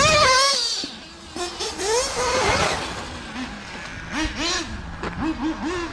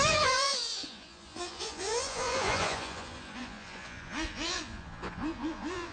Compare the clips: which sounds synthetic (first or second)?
second